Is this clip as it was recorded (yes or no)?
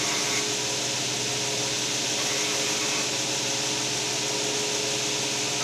yes